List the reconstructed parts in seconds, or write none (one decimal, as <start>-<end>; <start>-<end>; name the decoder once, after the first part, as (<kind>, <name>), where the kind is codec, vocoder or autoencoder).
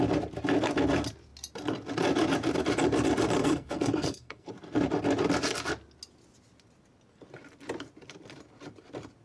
3.4-4.5 (codec, SNAC)